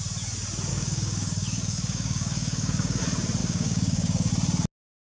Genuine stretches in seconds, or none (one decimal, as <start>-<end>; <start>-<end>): 0.0-0.7; 3.0-3.4; 4.3-5.0